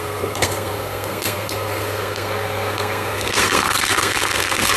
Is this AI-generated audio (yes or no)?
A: yes